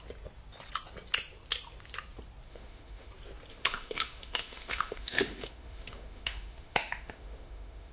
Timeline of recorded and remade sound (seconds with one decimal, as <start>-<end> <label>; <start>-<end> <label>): 0.0-2.5 recorded; 2.5-3.1 remade; 3.1-3.5 recorded; 3.5-7.9 remade